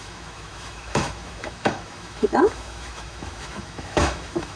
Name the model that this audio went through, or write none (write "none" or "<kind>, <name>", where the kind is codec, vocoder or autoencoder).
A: autoencoder, DAC-VAE